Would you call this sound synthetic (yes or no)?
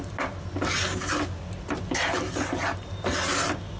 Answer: no